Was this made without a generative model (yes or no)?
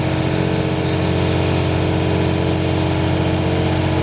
yes